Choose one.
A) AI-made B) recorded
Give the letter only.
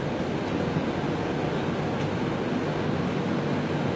B